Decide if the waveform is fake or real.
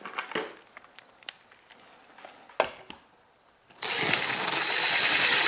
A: real